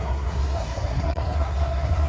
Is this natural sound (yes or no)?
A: no